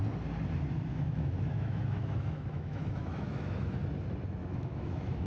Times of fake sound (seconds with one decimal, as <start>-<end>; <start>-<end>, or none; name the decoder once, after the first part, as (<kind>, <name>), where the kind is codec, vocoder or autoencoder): 0.9-3.8 (autoencoder, DAC-VAE); 4.4-5.3